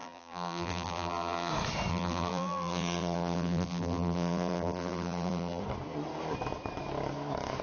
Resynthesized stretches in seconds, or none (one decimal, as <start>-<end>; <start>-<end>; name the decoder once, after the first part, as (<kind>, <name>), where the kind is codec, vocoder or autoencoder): 0.0-1.5 (vocoder, BigVGAN v2); 1.9-5.6